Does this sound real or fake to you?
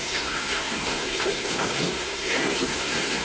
fake